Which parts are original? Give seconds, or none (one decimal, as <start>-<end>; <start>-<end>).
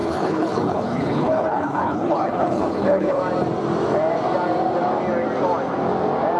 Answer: 3.2-6.4